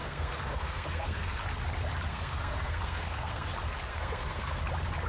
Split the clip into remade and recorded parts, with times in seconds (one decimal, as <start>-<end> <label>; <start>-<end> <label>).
0.0-1.4 remade; 1.4-2.1 recorded; 2.1-3.5 remade; 3.5-3.9 recorded; 3.9-4.6 remade; 4.6-5.1 recorded